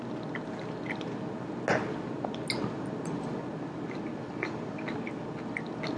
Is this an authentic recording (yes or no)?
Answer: yes